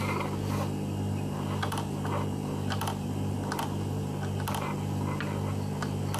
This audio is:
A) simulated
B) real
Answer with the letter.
B